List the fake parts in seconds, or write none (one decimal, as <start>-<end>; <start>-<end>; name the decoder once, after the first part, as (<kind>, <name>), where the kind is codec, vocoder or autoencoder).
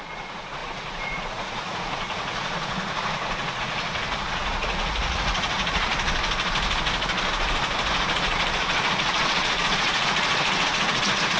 0.0-5.9 (vocoder, Vocos); 8.1-11.4